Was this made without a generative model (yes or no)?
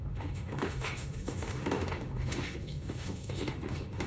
no